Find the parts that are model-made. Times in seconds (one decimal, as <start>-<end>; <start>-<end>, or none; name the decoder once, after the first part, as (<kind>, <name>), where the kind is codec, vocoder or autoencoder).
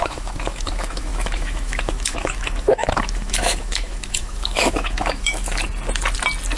0.0-5.6 (autoencoder, DAC-VAE)